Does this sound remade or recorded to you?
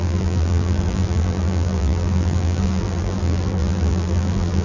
remade